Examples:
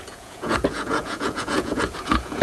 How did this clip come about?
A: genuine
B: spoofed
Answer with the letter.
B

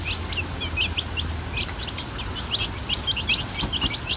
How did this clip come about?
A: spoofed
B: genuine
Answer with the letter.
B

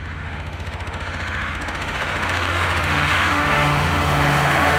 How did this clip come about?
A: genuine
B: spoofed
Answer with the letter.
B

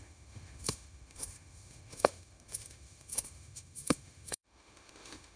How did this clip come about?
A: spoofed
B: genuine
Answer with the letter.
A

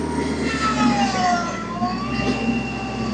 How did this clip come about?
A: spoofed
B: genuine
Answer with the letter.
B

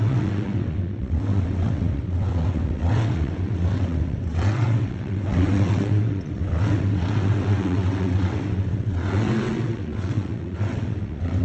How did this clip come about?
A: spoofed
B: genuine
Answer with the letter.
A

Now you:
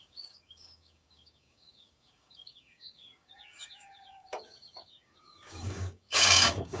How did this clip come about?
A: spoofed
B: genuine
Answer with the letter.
A